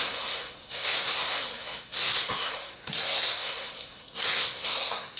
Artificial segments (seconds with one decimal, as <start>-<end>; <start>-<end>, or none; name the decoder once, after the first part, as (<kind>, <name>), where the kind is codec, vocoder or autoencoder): 0.0-5.2 (codec, SNAC)